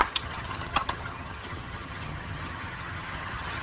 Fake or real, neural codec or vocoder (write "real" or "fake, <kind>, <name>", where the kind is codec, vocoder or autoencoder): fake, vocoder, HiFi-GAN